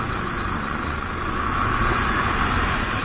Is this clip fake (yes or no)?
yes